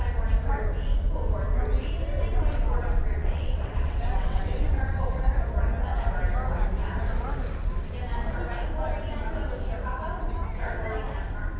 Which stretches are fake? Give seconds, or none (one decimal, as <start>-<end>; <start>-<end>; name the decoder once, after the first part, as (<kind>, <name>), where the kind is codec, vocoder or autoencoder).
2.3-5.2 (vocoder, WaveNeXt)